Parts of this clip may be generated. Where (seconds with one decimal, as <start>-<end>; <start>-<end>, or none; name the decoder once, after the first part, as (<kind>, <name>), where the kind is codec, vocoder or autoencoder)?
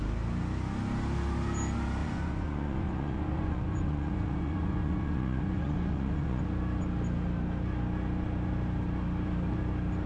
2.0-6.4 (vocoder, Vocos)